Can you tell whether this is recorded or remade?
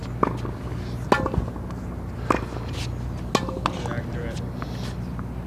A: recorded